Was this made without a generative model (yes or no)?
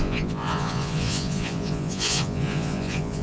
no